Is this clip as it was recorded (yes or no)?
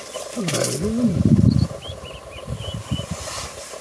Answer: yes